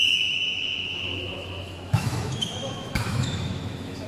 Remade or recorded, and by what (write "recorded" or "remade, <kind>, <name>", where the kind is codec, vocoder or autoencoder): remade, autoencoder, DAC-VAE